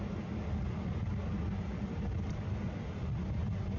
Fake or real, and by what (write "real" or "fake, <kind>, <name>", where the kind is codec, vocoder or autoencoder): real